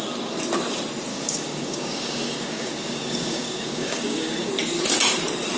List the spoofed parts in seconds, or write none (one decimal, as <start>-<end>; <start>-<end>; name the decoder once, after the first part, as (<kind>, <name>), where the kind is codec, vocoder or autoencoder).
1.1-4.5 (codec, DAC)